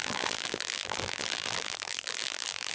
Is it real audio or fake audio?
fake